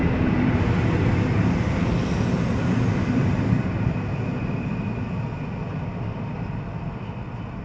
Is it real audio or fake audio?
real